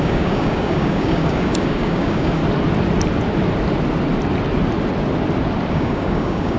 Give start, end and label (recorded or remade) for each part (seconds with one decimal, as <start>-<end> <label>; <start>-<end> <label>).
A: 0.0-2.4 remade; 2.4-5.7 recorded; 5.7-6.6 remade